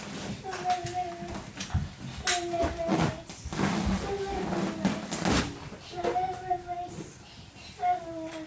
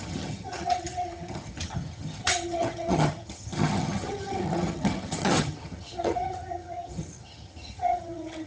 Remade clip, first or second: second